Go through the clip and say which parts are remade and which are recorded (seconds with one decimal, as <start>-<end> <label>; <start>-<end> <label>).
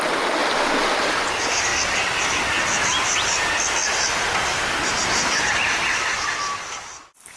0.0-7.4 recorded